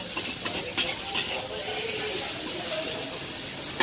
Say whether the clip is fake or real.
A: real